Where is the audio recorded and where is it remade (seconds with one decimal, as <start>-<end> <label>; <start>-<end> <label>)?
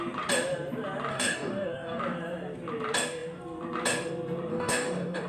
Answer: 0.0-1.1 recorded; 1.1-2.0 remade; 2.0-4.5 recorded; 4.5-5.3 remade